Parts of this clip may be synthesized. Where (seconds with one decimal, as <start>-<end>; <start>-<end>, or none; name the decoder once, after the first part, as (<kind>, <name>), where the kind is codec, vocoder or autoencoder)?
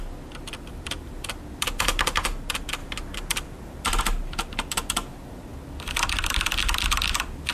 none